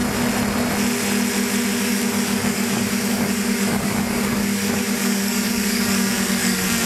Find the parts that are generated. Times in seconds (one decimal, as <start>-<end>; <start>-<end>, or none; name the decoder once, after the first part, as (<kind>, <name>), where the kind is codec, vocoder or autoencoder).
1.8-6.9 (codec, DAC)